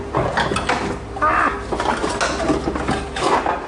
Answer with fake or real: real